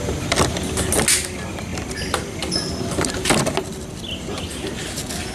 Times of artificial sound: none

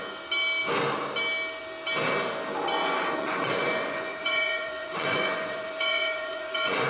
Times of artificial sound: 2.8-6.9 (vocoder, Vocos)

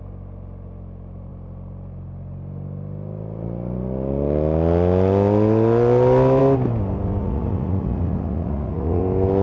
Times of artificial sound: 7.2-9.0 (vocoder, Vocos)

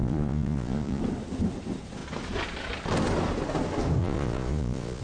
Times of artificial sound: 0.0-1.0 (vocoder, Vocos); 4.0-5.0

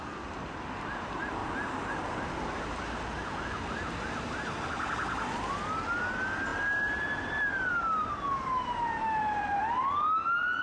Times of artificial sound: none

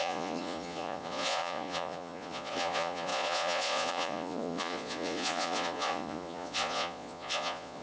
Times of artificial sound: 0.0-7.8 (vocoder, Vocos)

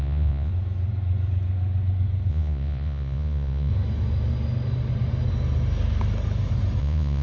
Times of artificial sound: 0.0-0.5 (vocoder, Vocos); 2.3-3.7; 6.8-7.2

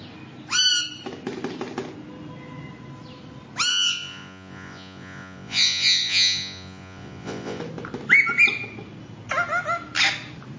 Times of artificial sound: 3.7-7.6 (vocoder, Vocos)